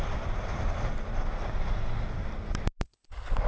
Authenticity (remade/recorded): remade